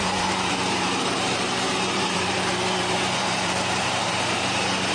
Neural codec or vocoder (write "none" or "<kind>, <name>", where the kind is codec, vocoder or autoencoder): vocoder, BigVGAN v2